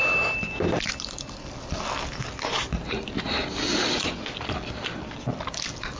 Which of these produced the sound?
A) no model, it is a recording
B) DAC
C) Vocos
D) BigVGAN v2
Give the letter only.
A